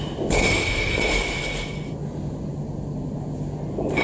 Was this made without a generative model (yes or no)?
yes